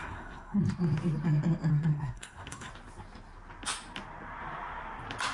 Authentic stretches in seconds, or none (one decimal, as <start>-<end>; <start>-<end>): 0.6-1.7; 2.7-5.3

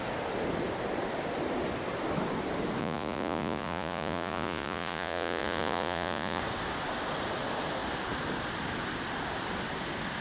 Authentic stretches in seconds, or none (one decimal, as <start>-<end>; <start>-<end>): 0.0-2.8; 6.4-10.2

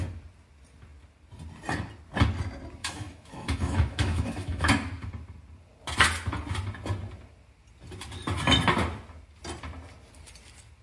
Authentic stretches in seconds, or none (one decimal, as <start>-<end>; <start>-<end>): 0.0-2.8; 4.7-10.8

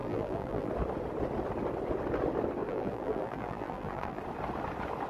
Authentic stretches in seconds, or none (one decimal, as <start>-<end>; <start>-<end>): 0.7-2.6; 4.2-5.1